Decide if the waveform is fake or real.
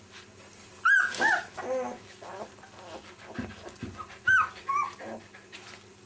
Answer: real